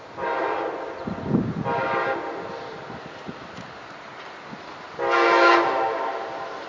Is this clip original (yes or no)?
yes